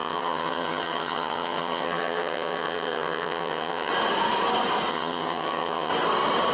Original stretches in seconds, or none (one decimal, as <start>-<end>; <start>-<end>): 3.9-4.9; 5.9-6.5